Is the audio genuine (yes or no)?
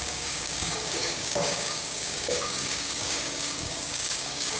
no